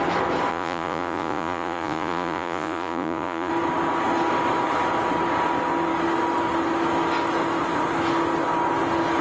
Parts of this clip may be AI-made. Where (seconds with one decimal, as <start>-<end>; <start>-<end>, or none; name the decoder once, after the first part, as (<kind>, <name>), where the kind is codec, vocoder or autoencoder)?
0.5-3.5 (vocoder, Vocos)